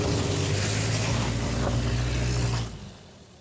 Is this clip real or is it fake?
real